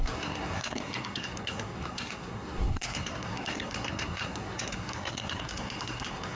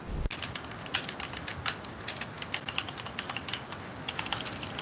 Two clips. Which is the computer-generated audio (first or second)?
first